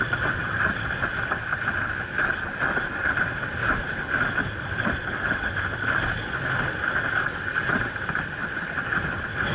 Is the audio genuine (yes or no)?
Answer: yes